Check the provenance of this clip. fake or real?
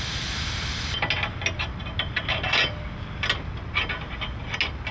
real